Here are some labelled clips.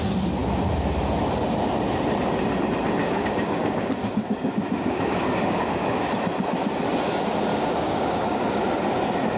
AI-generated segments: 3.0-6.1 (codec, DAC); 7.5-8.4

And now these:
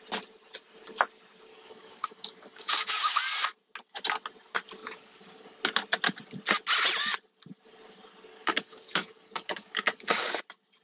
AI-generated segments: 1.5-3.2 (codec, DAC); 4.8-5.6; 8.3-10.4

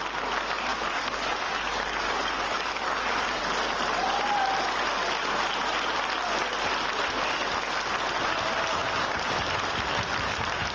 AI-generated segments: 0.7-3.4 (codec, DAC)